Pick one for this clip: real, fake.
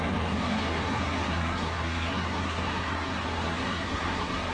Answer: fake